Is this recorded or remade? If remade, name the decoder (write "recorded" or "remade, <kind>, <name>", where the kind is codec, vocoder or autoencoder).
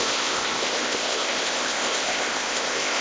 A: remade, codec, ZipCodec